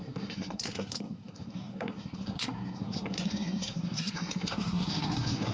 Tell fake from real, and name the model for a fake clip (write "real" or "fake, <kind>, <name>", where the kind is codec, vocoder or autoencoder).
fake, codec, SNAC